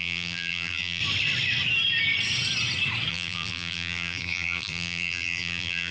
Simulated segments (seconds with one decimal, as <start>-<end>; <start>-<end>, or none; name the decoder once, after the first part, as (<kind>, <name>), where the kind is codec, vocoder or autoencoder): 0.0-1.0 (vocoder, BigVGAN v2); 3.1-5.9